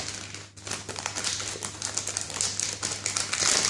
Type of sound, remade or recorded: recorded